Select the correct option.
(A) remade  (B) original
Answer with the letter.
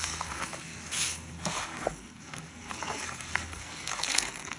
A